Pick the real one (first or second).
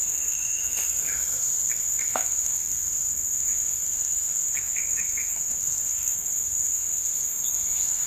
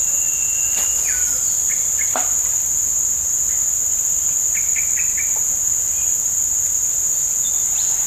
second